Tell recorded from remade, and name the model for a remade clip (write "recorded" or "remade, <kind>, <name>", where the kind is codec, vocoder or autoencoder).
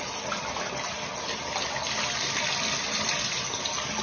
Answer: recorded